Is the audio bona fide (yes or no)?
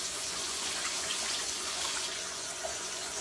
no